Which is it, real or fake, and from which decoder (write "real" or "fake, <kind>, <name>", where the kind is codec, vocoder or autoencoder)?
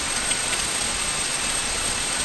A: fake, vocoder, Vocos